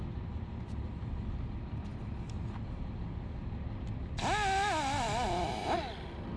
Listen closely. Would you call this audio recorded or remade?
recorded